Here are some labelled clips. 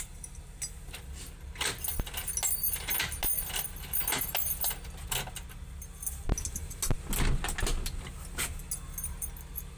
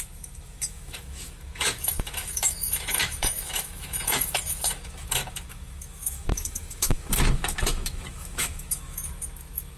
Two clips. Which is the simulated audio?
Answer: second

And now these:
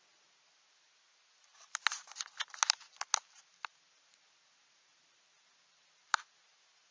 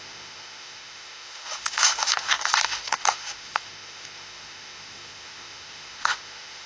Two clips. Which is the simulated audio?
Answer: second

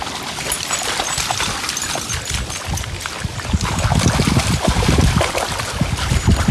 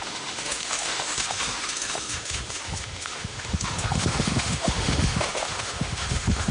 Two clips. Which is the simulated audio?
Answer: second